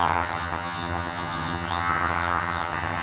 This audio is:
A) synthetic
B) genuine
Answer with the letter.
A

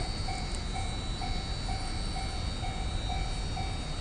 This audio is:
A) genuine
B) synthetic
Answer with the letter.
A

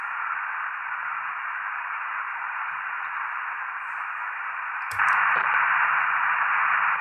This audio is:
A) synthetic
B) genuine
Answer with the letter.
B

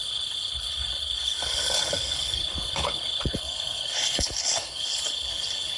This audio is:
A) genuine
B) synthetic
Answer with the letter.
B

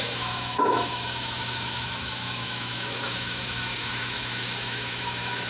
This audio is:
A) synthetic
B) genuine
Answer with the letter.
A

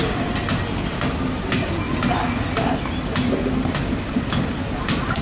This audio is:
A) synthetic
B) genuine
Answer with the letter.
B